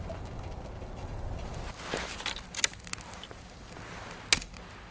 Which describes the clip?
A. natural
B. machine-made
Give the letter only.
A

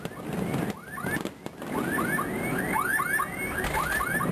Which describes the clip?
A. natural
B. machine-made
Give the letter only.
A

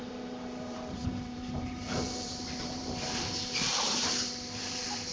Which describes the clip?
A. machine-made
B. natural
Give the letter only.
A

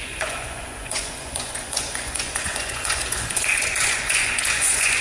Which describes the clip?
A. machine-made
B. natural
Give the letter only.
A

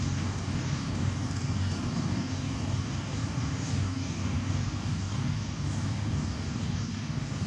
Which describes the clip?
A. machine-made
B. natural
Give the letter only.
A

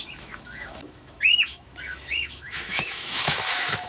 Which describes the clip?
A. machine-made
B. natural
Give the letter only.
A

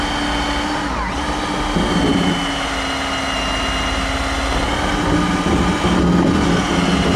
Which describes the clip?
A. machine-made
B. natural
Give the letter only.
B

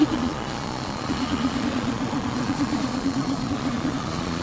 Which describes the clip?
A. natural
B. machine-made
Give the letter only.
B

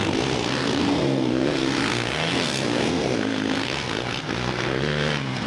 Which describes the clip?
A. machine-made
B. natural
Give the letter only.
A